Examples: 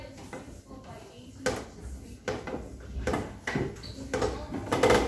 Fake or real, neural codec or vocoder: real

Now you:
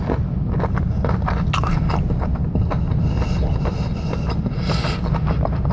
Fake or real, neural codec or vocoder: real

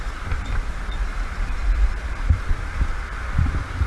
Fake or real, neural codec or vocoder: fake, vocoder, BigVGAN v2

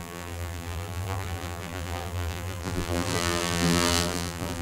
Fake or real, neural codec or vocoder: fake, vocoder, BigVGAN v2